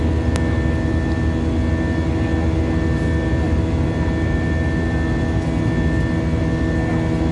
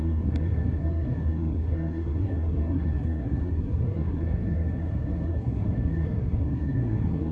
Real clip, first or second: first